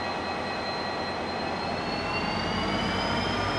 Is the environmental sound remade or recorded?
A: recorded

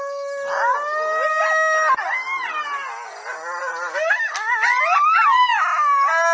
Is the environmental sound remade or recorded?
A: recorded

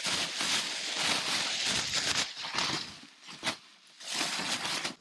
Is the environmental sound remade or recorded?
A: recorded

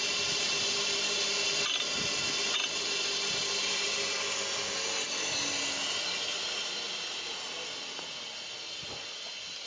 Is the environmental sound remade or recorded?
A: recorded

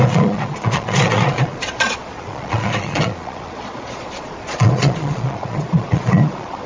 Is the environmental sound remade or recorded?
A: remade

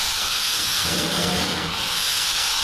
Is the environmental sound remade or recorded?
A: remade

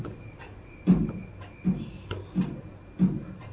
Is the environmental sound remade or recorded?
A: recorded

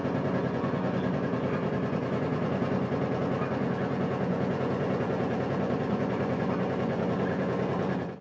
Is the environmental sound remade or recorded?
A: remade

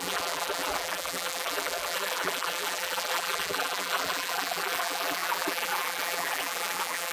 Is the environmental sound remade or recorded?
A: remade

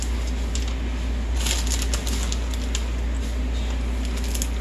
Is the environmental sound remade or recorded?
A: recorded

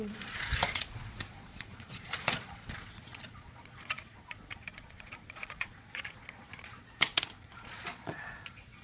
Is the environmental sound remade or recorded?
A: remade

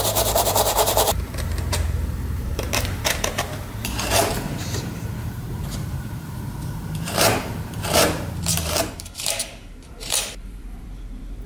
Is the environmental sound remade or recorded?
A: remade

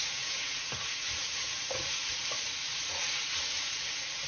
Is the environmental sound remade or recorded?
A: remade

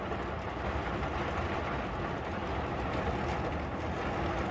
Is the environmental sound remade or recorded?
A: recorded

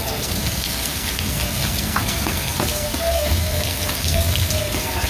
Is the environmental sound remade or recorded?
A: remade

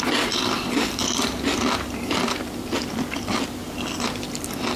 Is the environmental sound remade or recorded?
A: recorded